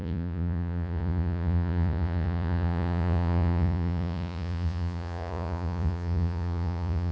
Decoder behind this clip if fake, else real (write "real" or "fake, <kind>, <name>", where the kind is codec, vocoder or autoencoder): fake, vocoder, Vocos